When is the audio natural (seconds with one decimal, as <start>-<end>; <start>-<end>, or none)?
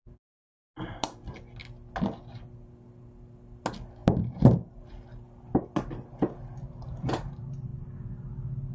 0.0-8.7